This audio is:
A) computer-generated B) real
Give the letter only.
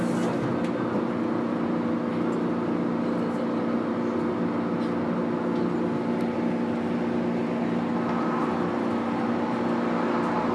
B